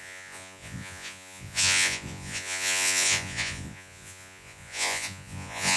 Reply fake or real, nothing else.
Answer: fake